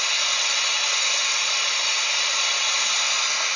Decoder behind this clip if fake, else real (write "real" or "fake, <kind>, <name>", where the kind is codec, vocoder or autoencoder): real